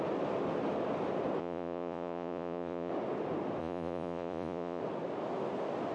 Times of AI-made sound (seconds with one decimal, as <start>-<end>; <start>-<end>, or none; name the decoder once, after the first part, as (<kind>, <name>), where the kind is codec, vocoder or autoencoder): 1.4-2.9 (vocoder, Vocos); 3.6-4.8